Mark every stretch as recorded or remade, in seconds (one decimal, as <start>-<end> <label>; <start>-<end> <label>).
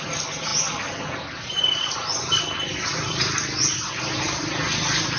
0.0-5.2 recorded